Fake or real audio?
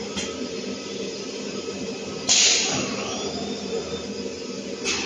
real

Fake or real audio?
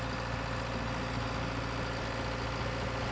real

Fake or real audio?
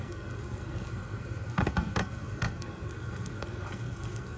fake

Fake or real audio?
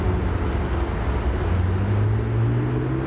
real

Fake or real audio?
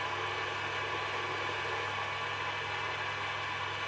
real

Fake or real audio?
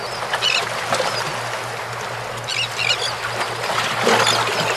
real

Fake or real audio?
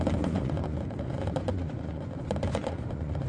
fake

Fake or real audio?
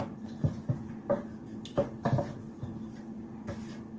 real